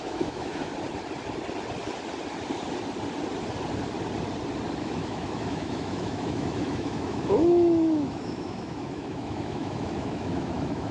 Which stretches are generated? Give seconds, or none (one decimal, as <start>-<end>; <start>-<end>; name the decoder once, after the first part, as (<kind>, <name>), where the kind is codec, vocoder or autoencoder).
0.0-0.7 (autoencoder, DAC-VAE); 4.8-10.9